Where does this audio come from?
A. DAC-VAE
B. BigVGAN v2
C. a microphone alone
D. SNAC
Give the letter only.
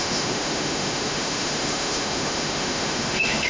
A